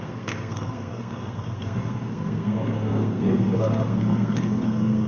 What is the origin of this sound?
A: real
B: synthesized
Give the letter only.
B